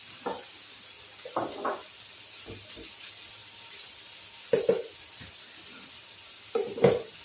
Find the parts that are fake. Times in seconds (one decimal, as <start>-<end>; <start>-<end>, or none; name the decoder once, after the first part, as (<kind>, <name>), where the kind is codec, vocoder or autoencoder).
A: none